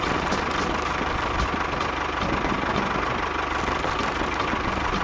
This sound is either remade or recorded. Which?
recorded